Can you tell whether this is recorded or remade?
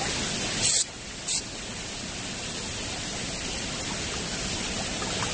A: recorded